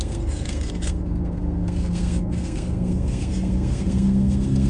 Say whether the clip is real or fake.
fake